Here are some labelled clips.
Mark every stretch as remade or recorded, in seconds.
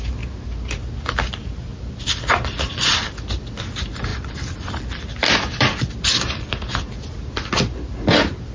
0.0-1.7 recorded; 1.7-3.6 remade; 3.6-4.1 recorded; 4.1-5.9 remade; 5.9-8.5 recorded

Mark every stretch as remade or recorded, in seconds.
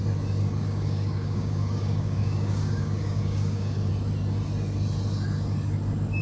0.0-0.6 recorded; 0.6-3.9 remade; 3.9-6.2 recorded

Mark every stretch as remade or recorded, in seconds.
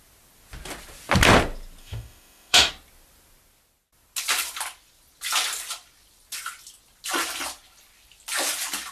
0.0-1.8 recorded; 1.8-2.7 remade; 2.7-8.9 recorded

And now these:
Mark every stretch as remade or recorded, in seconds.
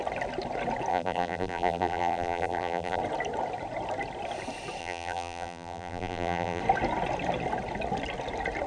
0.0-0.9 recorded; 0.9-3.0 remade; 3.0-4.8 recorded; 4.8-6.6 remade; 6.6-8.7 recorded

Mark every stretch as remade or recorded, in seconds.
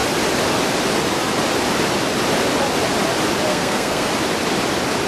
0.0-3.5 recorded; 3.5-4.1 remade; 4.1-5.1 recorded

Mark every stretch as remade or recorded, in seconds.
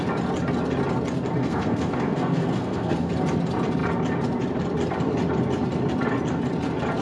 0.0-1.4 recorded; 1.4-3.1 remade; 3.1-7.0 recorded